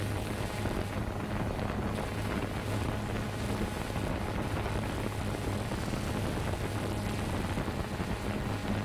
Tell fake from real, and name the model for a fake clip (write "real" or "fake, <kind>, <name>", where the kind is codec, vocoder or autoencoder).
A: real